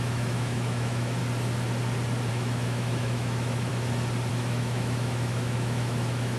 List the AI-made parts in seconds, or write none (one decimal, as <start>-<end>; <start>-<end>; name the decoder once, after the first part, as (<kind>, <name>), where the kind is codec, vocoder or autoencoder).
0.0-1.2 (autoencoder, DAC-VAE); 2.3-3.7; 4.3-6.4